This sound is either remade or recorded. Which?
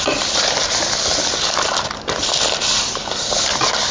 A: recorded